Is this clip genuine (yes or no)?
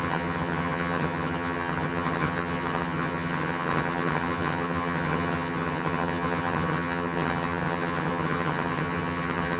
no